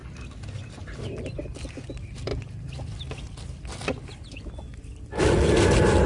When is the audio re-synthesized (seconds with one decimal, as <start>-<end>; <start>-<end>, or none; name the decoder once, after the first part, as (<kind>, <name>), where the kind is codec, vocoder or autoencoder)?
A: 1.0-2.3 (vocoder, BigVGAN v2); 5.1-6.1